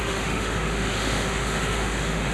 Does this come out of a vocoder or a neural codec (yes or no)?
yes